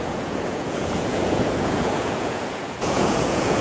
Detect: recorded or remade remade